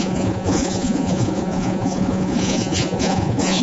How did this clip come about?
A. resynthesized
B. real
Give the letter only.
A